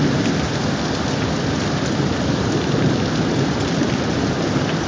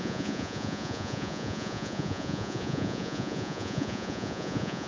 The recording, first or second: first